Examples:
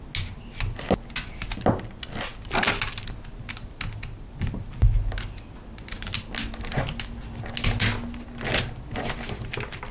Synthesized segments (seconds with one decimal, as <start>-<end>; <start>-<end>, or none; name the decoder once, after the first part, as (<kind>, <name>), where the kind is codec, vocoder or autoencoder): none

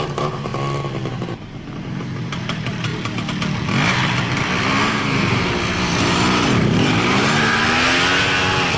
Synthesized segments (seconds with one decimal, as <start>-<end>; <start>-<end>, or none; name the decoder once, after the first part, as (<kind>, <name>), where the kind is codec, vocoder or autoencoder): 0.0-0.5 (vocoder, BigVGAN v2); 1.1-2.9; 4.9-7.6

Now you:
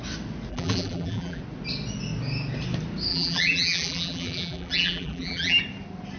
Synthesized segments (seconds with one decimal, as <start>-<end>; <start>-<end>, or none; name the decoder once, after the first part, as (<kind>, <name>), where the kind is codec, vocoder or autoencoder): 0.5-1.4 (vocoder, BigVGAN v2); 3.1-5.6

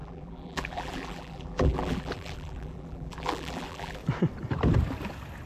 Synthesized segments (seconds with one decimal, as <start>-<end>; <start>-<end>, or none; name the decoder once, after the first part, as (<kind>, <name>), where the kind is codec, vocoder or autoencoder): 0.0-4.0 (vocoder, BigVGAN v2)

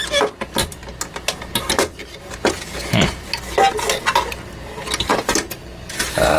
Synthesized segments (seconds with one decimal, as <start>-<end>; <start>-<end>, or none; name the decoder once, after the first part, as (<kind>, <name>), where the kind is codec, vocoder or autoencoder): none